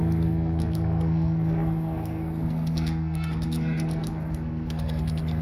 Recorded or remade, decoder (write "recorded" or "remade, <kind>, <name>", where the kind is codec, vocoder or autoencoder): remade, codec, SNAC